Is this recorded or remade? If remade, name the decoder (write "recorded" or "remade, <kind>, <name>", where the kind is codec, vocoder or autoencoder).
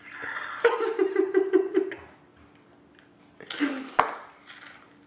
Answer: recorded